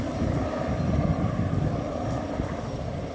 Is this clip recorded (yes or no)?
yes